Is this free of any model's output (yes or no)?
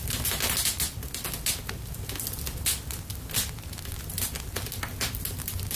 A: yes